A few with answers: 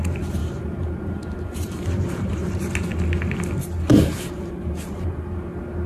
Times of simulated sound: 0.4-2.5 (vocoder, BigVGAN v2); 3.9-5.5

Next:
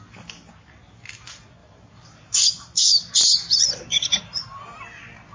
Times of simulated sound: 1.6-4.8 (vocoder, BigVGAN v2)

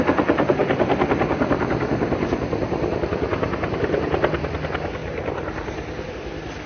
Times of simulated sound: 5.0-6.1 (vocoder, BigVGAN v2)

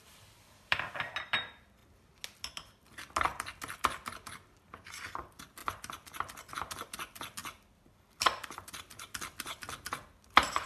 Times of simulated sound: 0.0-1.8 (vocoder, BigVGAN v2); 4.7-5.6; 6.5-10.7

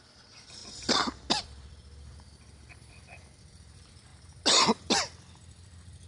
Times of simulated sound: 0.0-0.6 (vocoder, BigVGAN v2); 1.4-4.1; 4.9-6.1

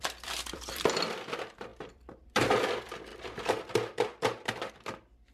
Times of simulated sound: 0.0-3.1 (vocoder, BigVGAN v2); 4.7-5.3

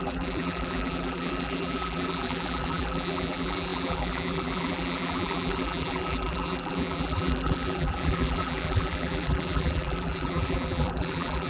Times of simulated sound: 0.0-11.5 (vocoder, BigVGAN v2)

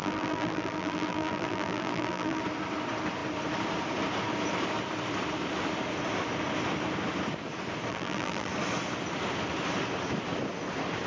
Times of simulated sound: 0.0-2.4 (vocoder, BigVGAN v2); 7.9-8.5